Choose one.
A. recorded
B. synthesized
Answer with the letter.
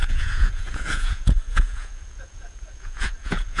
B